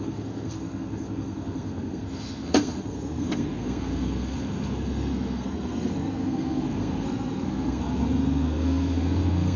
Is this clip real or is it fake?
fake